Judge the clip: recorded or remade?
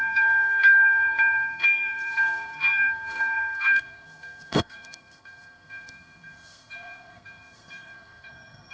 remade